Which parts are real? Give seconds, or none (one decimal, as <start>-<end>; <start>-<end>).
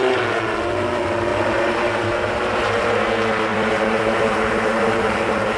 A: 0.0-1.3; 3.1-3.5